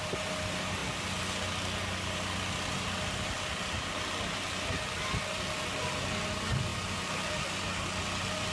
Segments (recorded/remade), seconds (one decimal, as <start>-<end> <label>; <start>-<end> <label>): 0.0-8.5 recorded